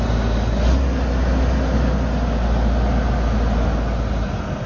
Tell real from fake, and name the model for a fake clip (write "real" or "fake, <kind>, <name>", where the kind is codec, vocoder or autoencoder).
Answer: real